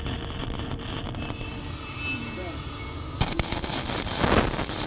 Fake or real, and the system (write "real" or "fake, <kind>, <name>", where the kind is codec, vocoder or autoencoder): real